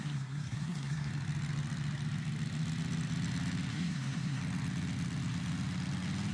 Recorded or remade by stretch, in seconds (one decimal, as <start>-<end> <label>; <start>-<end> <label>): 0.0-1.1 remade; 1.1-3.7 recorded; 3.7-4.4 remade; 4.4-6.3 recorded